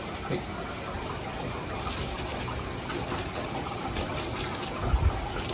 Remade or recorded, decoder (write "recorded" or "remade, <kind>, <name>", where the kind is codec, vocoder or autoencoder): recorded